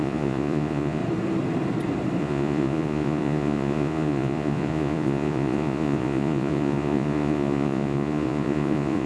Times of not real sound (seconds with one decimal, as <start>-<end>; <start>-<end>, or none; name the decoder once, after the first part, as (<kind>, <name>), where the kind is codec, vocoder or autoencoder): 0.0-1.0 (vocoder, Vocos); 2.2-9.1